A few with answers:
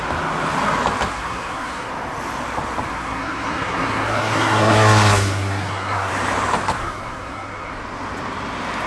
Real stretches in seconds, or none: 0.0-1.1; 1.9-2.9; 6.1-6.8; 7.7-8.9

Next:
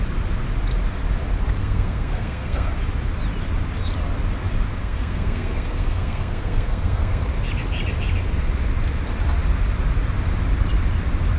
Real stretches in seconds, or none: 0.0-1.6; 2.7-4.8; 7.2-11.4

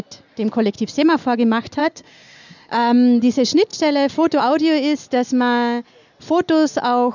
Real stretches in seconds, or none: 0.0-1.8; 2.7-7.1

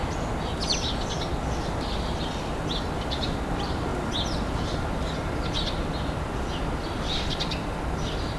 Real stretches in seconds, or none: 0.0-8.4

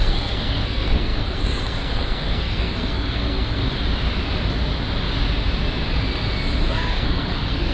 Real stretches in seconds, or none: 3.6-6.7